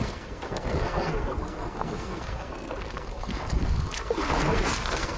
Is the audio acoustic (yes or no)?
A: no